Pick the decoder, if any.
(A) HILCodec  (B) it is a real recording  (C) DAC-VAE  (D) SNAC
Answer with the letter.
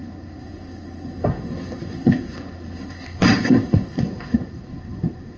D